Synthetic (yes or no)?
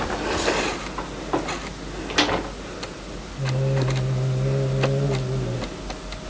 no